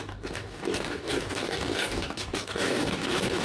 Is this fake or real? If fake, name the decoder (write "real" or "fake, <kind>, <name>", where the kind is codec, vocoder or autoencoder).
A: fake, codec, DAC